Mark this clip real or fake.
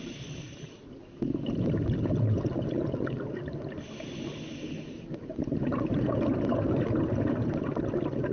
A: real